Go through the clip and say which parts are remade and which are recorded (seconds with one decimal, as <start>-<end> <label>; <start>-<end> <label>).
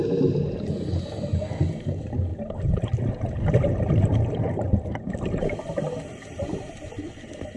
0.0-2.3 recorded; 2.3-6.9 remade; 6.9-7.6 recorded